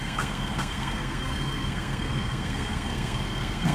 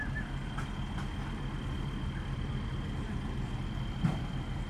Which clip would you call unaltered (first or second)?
second